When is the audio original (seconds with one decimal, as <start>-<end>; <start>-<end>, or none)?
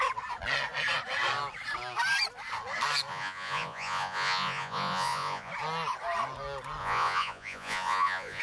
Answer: 0.0-3.1; 5.5-6.8